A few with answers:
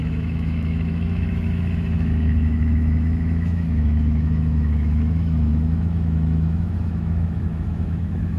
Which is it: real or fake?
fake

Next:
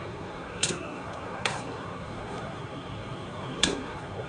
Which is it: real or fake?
fake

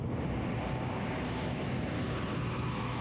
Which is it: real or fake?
real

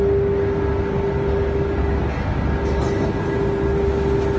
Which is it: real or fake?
real